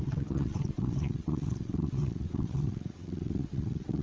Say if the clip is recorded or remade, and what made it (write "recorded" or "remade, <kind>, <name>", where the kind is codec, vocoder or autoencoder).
remade, vocoder, WaveNeXt